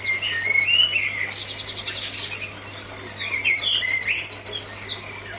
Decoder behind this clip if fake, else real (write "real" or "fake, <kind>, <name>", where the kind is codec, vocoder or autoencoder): fake, vocoder, BigVGAN v2